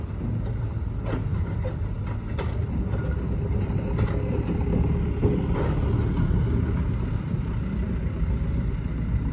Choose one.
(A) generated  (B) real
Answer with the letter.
B